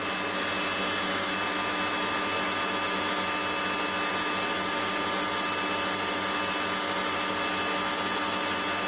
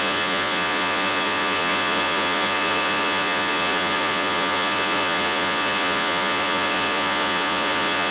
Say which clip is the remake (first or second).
second